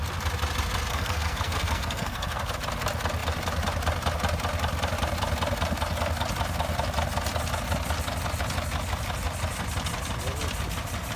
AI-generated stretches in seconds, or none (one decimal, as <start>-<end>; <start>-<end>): 0.9-2.5